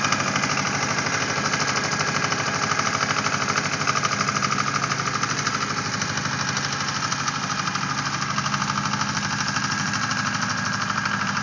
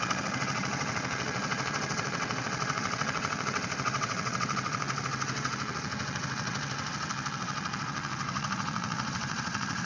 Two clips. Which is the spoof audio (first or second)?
second